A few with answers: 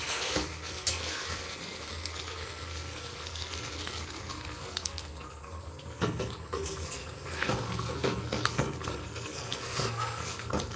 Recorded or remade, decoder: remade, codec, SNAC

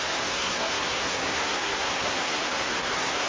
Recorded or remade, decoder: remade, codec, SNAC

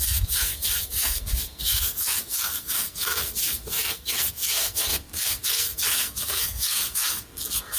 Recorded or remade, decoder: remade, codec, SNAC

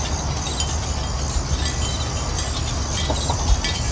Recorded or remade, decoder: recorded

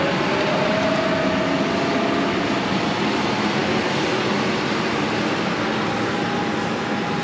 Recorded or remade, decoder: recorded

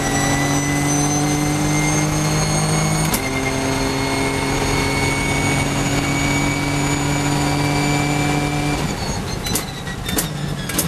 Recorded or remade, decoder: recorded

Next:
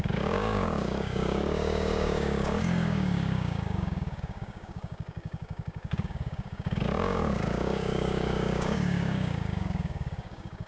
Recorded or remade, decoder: remade, codec, DAC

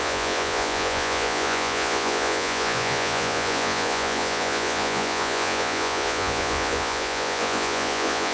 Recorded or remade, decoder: remade, vocoder, Vocos